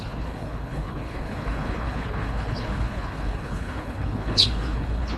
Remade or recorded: remade